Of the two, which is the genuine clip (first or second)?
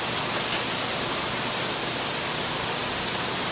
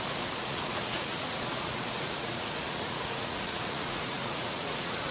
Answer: first